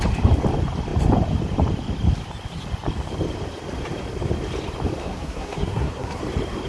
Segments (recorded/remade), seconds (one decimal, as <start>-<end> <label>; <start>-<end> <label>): 0.0-5.0 recorded; 5.0-6.2 remade; 6.2-6.7 recorded